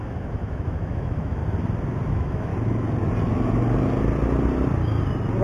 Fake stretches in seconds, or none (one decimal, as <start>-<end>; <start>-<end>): 0.0-1.4; 2.1-2.5